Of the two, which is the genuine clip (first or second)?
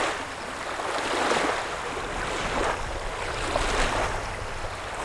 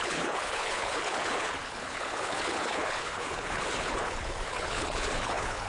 first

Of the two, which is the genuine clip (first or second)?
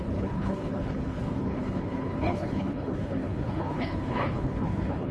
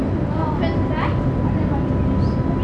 second